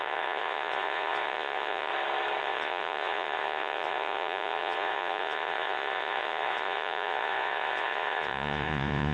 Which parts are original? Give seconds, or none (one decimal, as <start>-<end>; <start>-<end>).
1.9-2.4